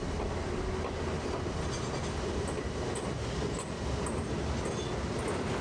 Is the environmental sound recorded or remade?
recorded